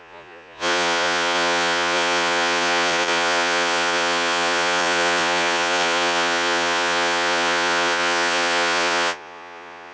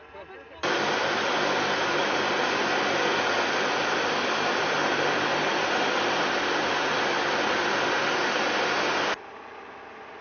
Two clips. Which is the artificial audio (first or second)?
first